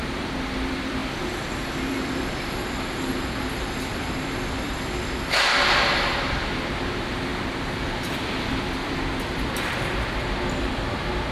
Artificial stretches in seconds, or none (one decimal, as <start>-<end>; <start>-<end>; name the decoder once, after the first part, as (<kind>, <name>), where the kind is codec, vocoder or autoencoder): 0.0-11.3 (vocoder, BigVGAN v2)